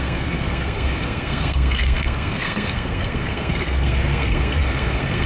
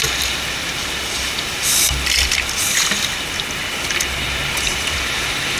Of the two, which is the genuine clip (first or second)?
second